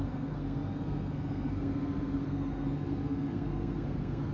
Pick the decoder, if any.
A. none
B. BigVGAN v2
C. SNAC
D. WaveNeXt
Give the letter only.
C